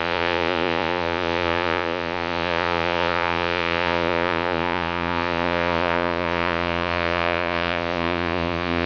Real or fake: fake